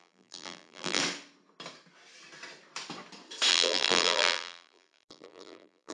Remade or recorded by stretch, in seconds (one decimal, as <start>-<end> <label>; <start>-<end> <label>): 0.0-1.0 remade; 1.0-3.5 recorded; 3.5-5.9 remade

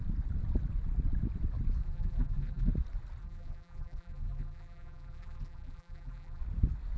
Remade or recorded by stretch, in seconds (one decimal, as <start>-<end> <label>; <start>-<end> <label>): 0.0-1.8 recorded; 1.8-2.7 remade; 2.7-3.2 recorded; 3.2-6.4 remade; 6.4-7.0 recorded